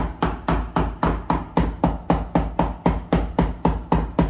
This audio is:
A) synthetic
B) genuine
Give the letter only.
B